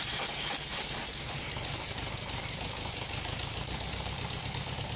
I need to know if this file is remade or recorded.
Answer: remade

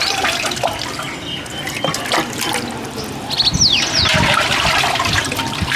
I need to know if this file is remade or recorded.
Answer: recorded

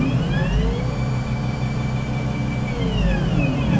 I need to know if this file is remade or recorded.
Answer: recorded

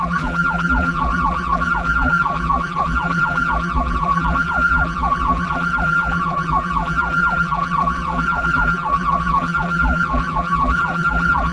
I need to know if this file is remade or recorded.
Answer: remade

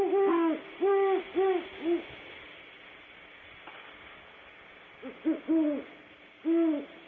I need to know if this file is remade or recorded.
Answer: recorded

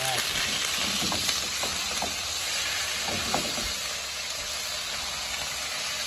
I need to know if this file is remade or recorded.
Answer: recorded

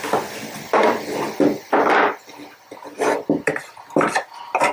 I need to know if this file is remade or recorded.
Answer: recorded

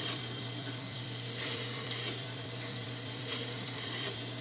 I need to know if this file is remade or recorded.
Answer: remade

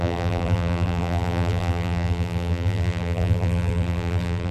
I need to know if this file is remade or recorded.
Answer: remade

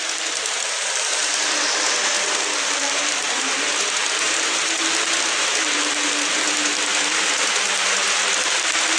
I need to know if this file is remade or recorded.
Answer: remade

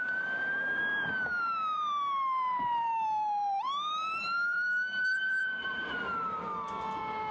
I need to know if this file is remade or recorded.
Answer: remade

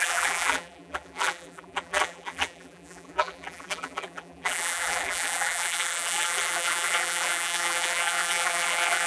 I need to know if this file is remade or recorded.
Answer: remade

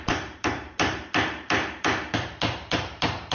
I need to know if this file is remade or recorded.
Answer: recorded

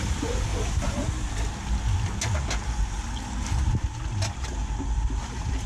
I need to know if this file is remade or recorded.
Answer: recorded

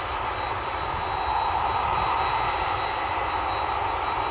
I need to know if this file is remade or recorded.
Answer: recorded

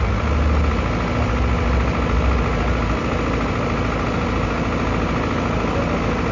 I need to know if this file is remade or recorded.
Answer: recorded